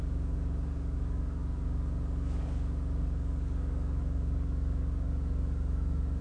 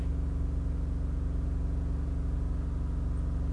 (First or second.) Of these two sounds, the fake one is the first